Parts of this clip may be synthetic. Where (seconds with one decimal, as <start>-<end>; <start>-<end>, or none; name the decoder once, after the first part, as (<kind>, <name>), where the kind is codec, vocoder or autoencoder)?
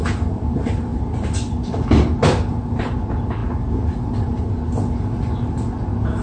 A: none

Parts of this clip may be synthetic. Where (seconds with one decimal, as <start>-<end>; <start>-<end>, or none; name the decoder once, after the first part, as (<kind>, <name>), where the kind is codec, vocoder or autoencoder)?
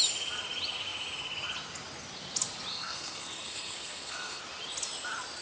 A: 2.7-4.4 (codec, SNAC)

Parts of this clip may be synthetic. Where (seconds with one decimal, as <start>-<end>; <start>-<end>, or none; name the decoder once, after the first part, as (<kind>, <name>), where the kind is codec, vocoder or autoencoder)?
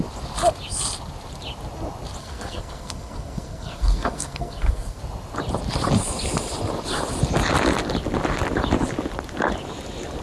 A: 2.2-5.0 (codec, SNAC)